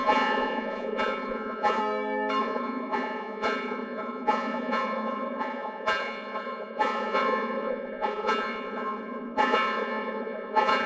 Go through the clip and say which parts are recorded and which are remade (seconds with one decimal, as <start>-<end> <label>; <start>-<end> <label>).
0.0-1.8 remade; 1.8-2.4 recorded; 2.4-10.9 remade